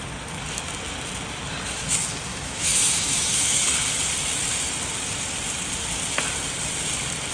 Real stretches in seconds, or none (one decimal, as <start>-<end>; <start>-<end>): 0.0-2.3; 3.6-7.3